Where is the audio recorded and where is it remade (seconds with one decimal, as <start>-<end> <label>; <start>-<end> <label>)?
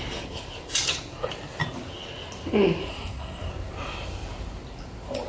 0.0-2.9 recorded; 2.9-3.5 remade; 3.5-5.3 recorded